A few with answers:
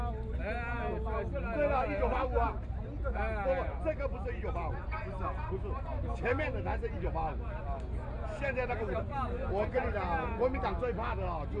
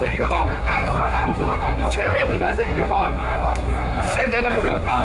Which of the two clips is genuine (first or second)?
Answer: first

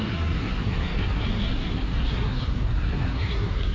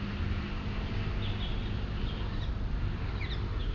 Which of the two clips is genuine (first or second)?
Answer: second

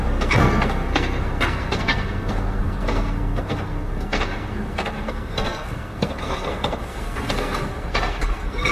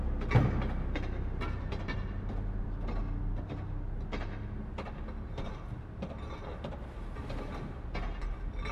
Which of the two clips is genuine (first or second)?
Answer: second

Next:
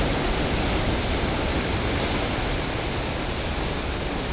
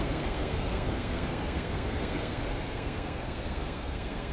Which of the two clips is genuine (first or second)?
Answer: first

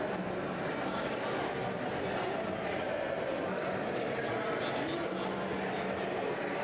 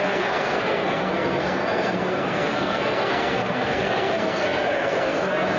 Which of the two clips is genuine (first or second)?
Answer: first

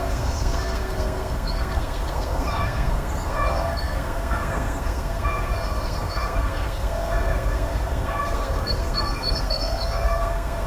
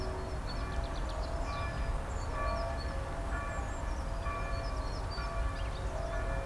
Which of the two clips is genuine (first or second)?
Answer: second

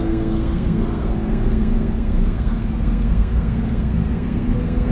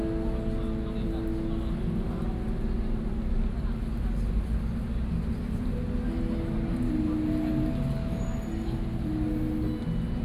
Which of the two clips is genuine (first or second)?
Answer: second